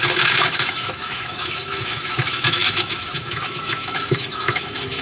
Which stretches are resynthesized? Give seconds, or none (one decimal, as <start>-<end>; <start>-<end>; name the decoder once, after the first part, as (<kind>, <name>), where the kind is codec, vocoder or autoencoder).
0.0-5.0 (autoencoder, DAC-VAE)